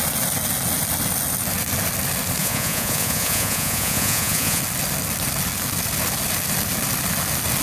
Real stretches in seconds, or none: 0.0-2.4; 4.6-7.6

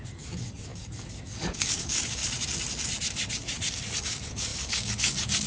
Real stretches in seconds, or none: 2.2-4.0

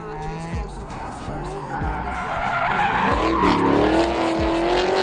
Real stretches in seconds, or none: 0.0-0.8; 1.3-5.0